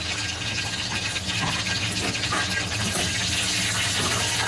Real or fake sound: real